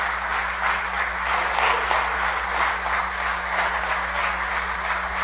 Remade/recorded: recorded